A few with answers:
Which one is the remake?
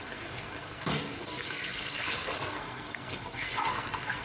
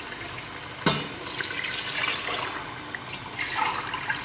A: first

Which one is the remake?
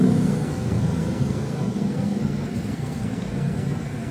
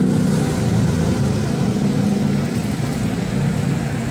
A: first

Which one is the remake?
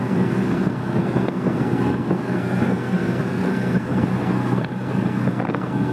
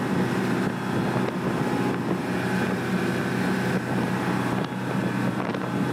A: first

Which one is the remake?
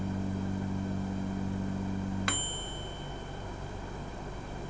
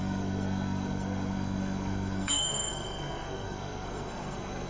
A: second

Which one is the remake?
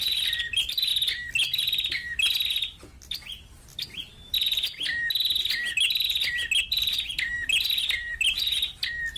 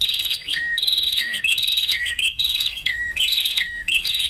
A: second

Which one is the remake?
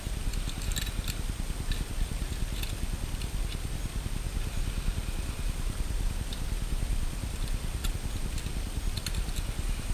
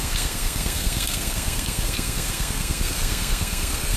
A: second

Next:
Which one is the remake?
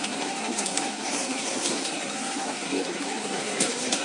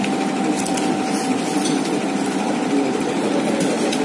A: first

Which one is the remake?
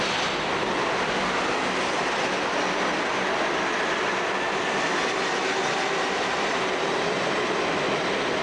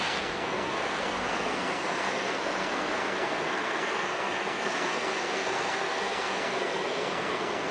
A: second